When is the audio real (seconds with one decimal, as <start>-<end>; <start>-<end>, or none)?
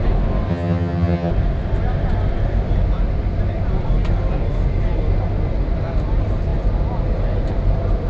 0.0-0.5; 1.3-8.1